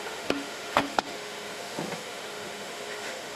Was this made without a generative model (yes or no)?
no